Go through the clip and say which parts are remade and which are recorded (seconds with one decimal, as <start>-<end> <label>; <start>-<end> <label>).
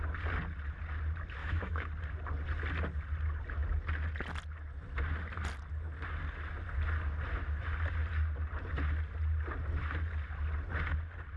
0.0-1.4 recorded; 1.4-1.9 remade; 1.9-11.4 recorded